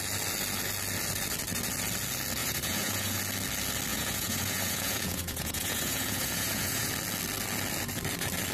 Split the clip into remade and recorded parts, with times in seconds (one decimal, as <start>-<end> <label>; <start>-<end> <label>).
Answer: 0.0-2.4 recorded; 2.4-3.2 remade; 3.2-3.9 recorded; 3.9-6.9 remade; 6.9-8.5 recorded